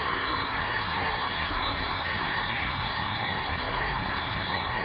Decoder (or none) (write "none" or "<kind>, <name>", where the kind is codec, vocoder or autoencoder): codec, SNAC